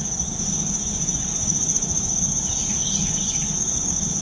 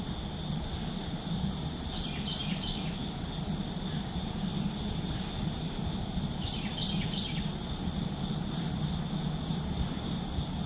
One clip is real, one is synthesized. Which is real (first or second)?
second